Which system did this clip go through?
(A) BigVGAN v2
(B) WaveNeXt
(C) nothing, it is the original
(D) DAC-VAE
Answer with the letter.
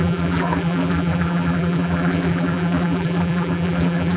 A